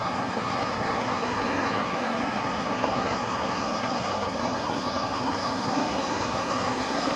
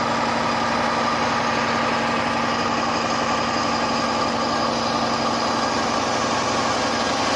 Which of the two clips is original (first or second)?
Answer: second